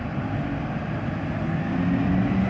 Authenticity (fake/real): real